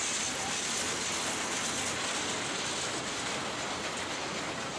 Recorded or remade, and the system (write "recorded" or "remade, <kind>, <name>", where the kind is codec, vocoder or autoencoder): recorded